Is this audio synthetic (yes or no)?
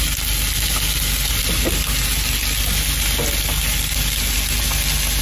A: no